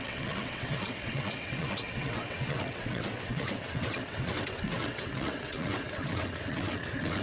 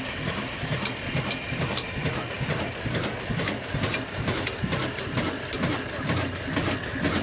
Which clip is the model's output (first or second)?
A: first